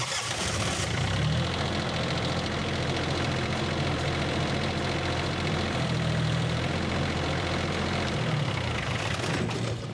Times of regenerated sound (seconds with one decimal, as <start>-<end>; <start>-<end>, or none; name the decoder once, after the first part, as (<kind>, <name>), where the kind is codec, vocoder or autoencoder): 0.0-9.9 (vocoder, BigVGAN v2)